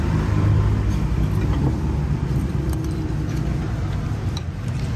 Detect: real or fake fake